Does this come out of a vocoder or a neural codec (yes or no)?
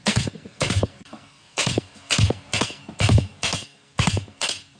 yes